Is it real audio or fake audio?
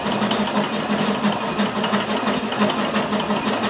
real